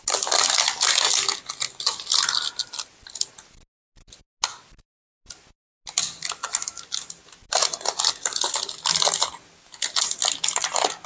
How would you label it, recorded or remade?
recorded